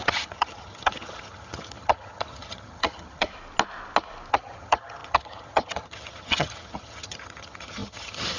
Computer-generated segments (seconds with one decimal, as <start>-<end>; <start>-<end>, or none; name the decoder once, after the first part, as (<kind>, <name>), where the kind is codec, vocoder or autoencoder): 0.0-3.3 (vocoder, HiFi-GAN); 4.3-8.4